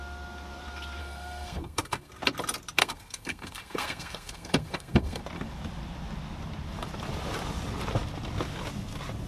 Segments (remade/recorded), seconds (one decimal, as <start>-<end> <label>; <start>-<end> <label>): 0.0-1.0 recorded; 1.0-2.1 remade; 2.1-2.8 recorded; 2.8-5.2 remade; 5.2-9.3 recorded